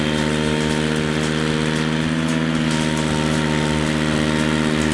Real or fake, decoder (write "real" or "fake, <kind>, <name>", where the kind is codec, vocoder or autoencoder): real